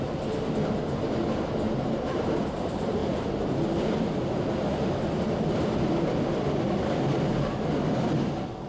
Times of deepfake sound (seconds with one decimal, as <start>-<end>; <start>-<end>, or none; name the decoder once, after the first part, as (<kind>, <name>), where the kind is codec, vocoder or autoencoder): none